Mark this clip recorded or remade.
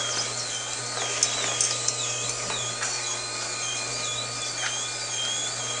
recorded